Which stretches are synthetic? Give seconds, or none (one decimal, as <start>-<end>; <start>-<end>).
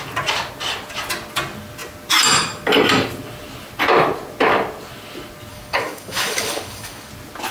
5.5-7.1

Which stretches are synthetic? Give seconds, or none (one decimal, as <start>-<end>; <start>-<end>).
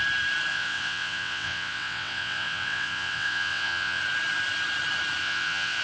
0.5-4.0; 5.2-5.8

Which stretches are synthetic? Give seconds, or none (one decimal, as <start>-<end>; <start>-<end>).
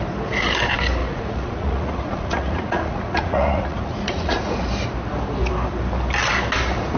1.0-4.7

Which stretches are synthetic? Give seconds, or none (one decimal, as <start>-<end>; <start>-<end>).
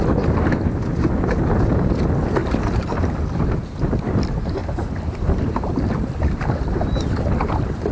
4.6-7.5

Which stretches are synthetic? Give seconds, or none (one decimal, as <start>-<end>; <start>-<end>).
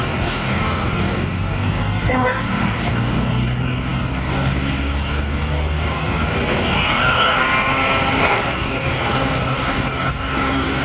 0.0-7.4; 8.1-10.8